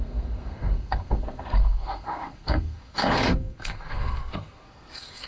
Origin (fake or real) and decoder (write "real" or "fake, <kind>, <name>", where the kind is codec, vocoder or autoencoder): fake, codec, SNAC